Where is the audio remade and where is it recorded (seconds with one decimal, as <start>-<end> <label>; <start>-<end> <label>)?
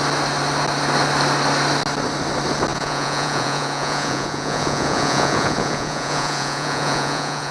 0.0-2.7 recorded; 2.7-7.5 remade